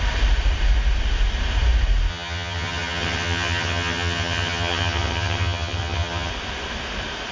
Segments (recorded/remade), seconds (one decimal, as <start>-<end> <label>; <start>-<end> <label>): 0.0-2.1 recorded; 2.1-6.3 remade; 6.3-7.3 recorded